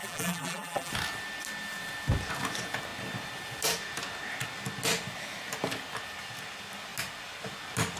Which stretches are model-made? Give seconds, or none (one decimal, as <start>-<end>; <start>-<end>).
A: 0.0-0.9